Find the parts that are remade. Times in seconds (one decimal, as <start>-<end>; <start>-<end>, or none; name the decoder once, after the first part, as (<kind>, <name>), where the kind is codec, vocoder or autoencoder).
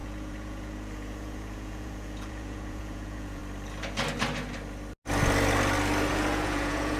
0.0-3.4 (vocoder, Vocos); 6.1-7.0